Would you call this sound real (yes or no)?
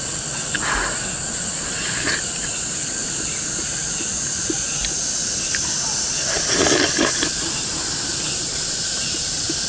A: yes